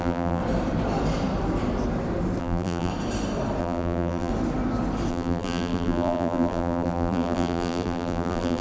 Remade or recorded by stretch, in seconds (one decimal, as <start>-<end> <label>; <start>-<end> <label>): 0.0-0.4 remade; 0.4-2.4 recorded; 2.4-2.9 remade; 2.9-3.6 recorded; 3.6-4.3 remade; 4.3-5.1 recorded; 5.1-8.6 remade